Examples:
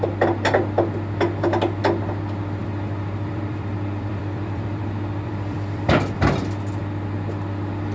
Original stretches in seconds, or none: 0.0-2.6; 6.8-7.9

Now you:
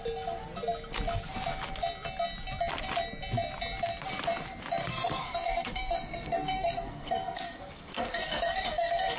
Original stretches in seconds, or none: 0.0-4.8

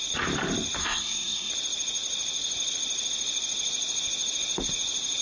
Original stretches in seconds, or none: 0.0-0.8; 1.5-5.2

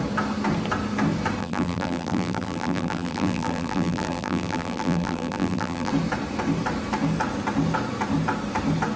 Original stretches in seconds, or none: 0.0-1.4; 5.9-9.0

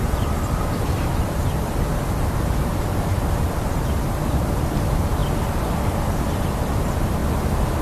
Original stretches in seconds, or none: 1.9-3.4; 5.2-6.6; 7.2-7.8

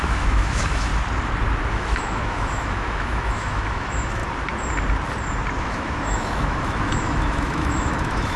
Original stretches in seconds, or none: 0.9-1.7; 4.2-5.6

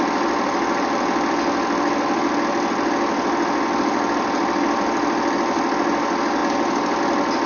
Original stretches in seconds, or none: 0.0-7.5

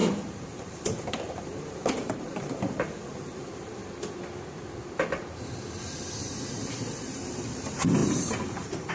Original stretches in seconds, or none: 3.8-6.5